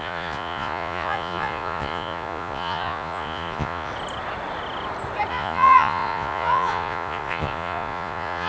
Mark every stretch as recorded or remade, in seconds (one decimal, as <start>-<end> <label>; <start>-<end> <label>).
0.0-3.9 remade; 3.9-5.3 recorded; 5.3-8.5 remade